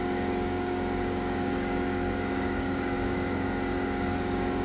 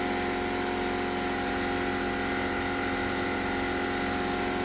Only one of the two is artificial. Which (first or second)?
first